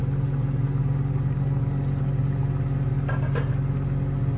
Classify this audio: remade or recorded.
recorded